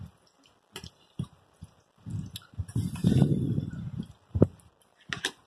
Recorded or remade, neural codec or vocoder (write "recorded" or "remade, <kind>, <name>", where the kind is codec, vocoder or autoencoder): recorded